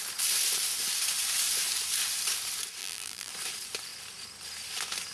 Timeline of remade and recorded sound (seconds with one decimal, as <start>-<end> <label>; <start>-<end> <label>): 0.0-2.8 recorded; 2.8-3.3 remade; 3.3-5.1 recorded